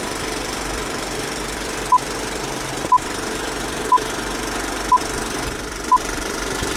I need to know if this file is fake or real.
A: fake